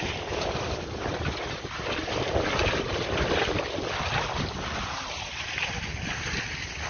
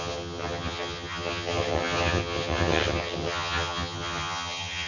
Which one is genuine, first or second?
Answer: first